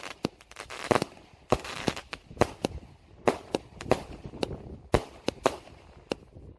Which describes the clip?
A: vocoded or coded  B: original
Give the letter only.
B